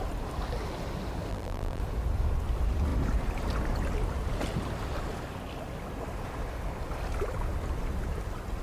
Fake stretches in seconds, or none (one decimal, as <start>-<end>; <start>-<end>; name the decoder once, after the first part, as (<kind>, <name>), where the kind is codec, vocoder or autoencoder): 1.3-1.8 (vocoder, BigVGAN v2)